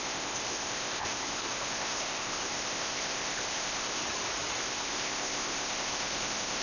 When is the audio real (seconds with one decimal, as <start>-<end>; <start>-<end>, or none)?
4.0-4.6